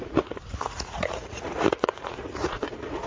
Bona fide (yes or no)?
no